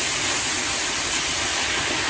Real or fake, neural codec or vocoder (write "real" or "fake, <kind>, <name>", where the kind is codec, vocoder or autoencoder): real